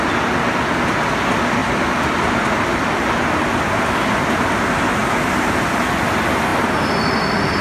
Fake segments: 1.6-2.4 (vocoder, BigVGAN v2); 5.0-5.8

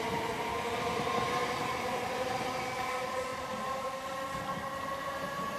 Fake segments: 3.3-4.1 (vocoder, BigVGAN v2)